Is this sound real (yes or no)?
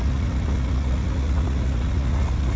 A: no